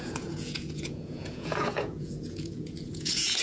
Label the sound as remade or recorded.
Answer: remade